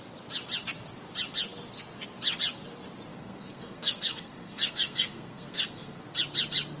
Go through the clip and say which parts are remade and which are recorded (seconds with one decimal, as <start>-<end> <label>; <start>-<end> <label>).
0.0-3.1 recorded; 3.1-6.0 remade; 6.0-6.8 recorded